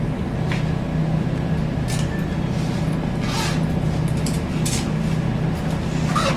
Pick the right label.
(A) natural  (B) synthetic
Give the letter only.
A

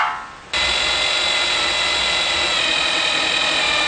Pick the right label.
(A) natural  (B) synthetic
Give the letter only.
A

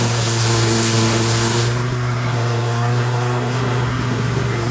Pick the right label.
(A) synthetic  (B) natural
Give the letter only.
A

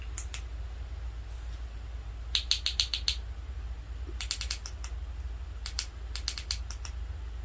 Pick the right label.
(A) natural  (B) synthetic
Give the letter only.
A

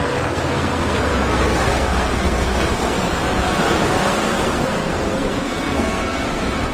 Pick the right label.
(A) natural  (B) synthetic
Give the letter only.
B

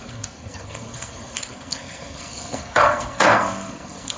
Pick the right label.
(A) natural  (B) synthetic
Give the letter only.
B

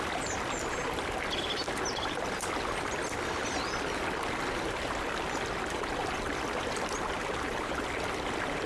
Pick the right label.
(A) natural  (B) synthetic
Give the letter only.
A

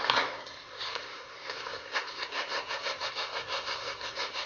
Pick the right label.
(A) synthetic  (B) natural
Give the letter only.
A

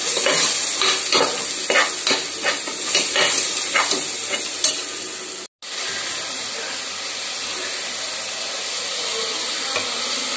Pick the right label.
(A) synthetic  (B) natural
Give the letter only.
B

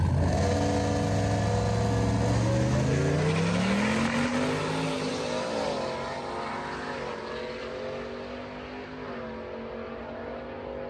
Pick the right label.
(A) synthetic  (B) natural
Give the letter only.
B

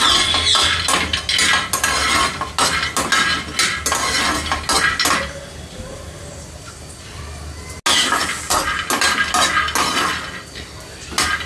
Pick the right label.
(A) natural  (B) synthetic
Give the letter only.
A